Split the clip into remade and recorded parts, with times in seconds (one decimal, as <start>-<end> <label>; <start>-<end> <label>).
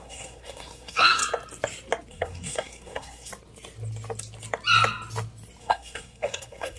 0.0-1.2 remade; 1.2-2.1 recorded; 2.1-3.3 remade; 3.3-5.6 recorded; 5.6-6.8 remade